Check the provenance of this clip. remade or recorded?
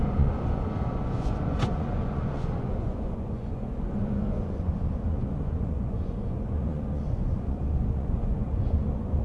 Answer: remade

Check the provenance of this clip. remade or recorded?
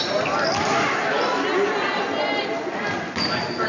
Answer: recorded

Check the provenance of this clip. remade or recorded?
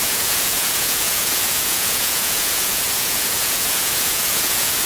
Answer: remade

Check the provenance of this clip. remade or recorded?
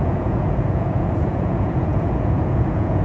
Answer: remade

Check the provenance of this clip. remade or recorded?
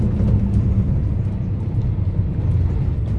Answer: recorded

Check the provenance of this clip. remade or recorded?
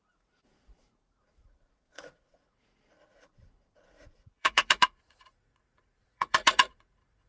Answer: remade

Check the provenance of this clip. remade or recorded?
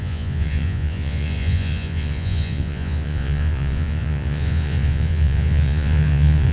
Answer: remade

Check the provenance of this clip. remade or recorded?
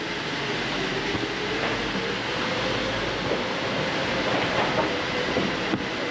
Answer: recorded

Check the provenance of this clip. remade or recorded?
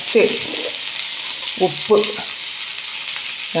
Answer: recorded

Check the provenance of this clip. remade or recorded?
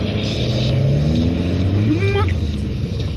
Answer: recorded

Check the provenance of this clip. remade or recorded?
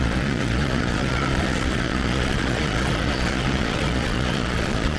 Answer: remade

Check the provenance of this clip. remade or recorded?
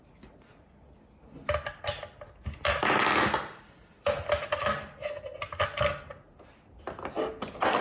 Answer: recorded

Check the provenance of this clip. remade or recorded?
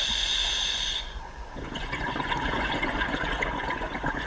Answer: remade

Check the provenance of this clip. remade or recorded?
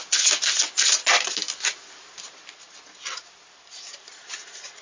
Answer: recorded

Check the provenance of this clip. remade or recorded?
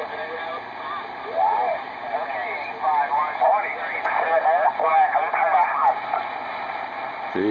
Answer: recorded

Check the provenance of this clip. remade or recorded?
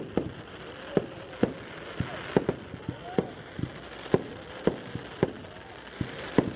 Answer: recorded